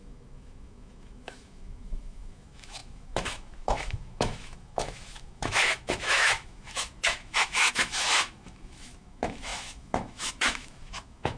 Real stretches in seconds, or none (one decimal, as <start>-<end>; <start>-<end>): none